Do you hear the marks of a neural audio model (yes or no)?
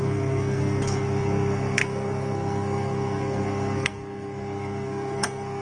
yes